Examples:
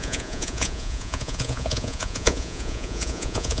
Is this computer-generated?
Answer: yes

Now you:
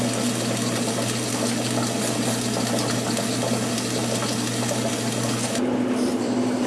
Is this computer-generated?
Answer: no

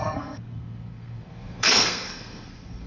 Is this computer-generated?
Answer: yes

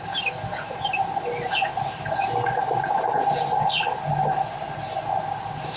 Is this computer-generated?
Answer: no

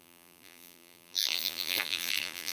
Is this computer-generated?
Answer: yes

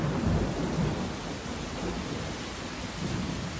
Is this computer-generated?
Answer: no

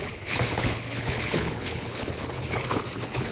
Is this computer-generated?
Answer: yes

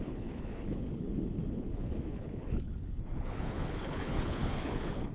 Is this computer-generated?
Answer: yes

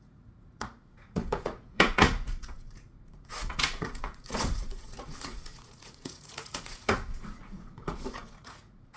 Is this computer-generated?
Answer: yes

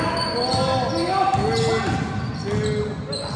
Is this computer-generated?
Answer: no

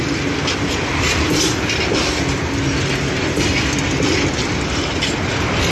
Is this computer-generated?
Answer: no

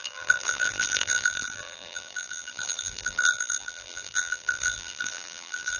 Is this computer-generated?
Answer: yes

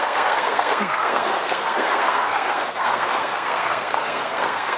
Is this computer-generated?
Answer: yes